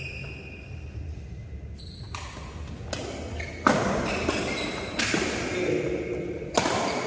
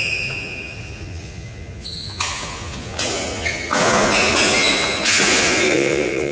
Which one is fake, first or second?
second